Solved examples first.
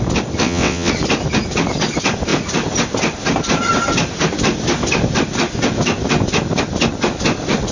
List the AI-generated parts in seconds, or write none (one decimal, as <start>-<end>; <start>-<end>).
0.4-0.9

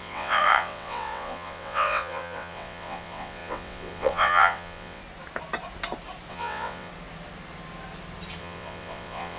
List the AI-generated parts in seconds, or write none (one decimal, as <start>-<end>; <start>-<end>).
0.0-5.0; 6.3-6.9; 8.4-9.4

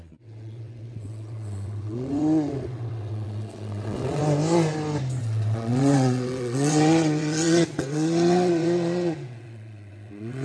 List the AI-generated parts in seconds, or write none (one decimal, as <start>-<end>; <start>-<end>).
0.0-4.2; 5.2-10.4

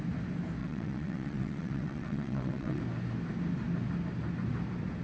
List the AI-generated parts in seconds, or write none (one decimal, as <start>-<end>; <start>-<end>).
0.6-2.8

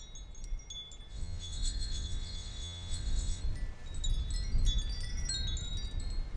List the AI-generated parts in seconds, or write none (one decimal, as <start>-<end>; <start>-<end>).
1.1-3.4